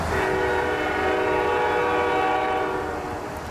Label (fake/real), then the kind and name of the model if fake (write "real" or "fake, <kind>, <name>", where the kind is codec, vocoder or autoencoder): real